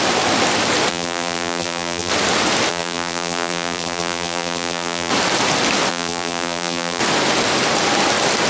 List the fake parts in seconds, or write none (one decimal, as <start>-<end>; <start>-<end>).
0.9-2.1; 2.7-5.1; 5.9-7.0